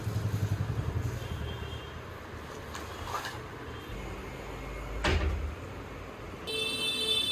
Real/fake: real